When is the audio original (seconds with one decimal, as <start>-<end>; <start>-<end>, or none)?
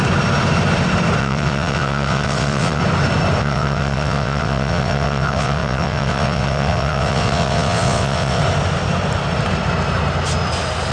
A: 0.0-1.2; 2.8-3.4; 8.4-10.9